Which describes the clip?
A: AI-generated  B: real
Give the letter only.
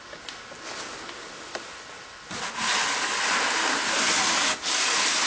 B